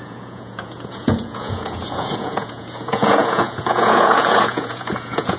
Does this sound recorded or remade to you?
remade